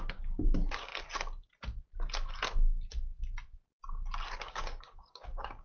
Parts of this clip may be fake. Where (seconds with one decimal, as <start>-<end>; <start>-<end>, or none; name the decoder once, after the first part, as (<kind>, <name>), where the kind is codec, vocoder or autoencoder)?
0.0-0.9 (codec, DAC); 4.3-5.6